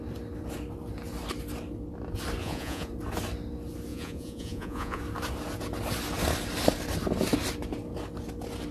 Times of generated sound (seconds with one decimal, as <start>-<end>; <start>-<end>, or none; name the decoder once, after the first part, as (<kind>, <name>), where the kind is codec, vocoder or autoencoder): 2.4-2.9 (vocoder, Vocos); 3.9-5.0